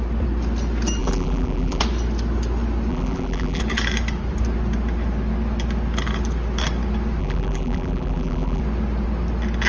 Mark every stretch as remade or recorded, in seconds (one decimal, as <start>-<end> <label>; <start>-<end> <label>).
0.0-1.0 recorded; 1.0-1.8 remade; 1.8-2.9 recorded; 2.9-3.6 remade; 3.6-7.2 recorded; 7.2-8.6 remade; 8.6-9.7 recorded